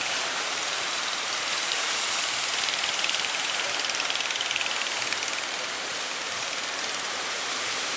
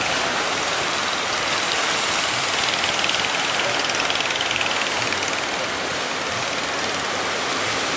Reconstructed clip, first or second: first